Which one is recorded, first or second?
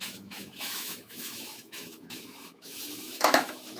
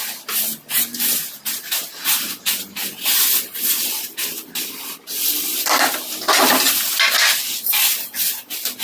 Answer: second